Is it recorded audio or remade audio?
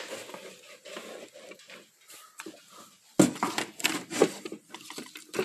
recorded